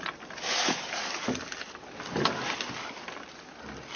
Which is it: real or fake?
real